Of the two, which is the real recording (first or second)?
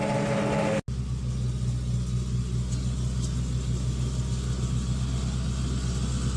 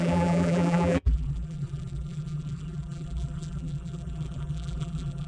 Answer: first